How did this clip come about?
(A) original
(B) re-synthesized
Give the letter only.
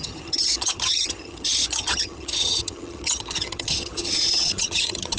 B